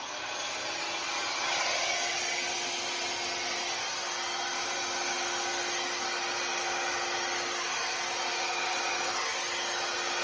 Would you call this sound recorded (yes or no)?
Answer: yes